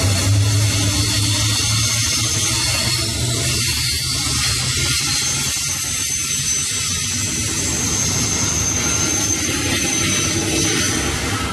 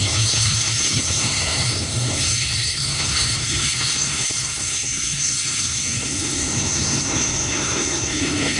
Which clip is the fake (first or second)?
second